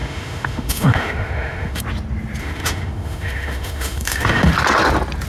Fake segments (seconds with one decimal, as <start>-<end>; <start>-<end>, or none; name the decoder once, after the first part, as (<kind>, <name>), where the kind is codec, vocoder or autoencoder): 0.0-1.8 (autoencoder, DAC-VAE); 2.4-4.5